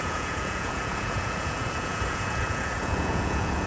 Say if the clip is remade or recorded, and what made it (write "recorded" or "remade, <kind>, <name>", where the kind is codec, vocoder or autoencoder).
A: remade, vocoder, Vocos